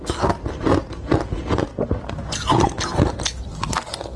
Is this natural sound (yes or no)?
yes